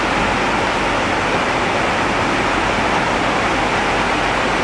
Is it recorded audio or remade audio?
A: recorded